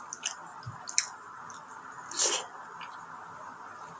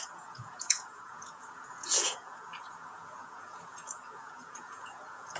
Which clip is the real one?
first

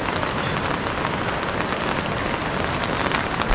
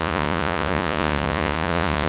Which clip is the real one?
first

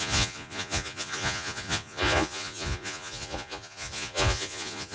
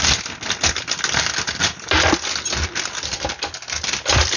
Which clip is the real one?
second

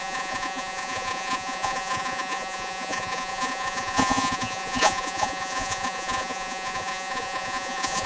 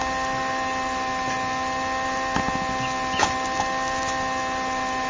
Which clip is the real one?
second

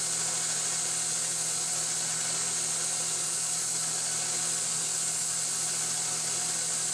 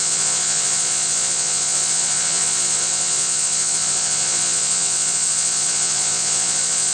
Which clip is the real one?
first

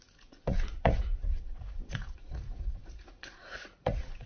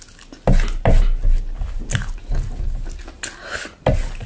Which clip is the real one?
second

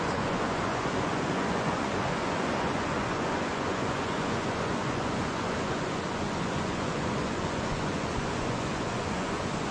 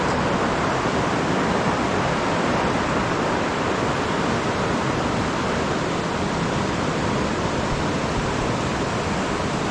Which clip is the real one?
second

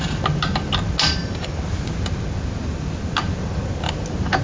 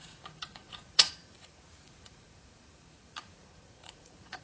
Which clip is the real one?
first